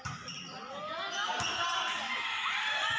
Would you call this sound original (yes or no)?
yes